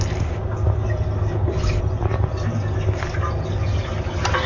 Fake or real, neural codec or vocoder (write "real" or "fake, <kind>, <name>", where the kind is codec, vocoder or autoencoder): real